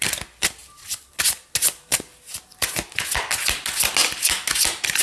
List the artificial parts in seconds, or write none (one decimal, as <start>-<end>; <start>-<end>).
none